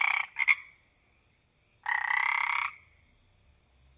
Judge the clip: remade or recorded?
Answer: recorded